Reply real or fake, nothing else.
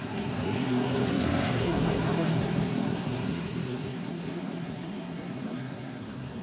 fake